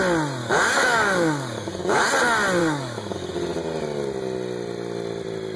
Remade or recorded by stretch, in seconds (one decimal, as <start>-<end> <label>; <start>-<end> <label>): 0.0-0.4 recorded; 0.4-2.1 remade; 2.1-2.6 recorded; 2.6-3.3 remade; 3.3-5.6 recorded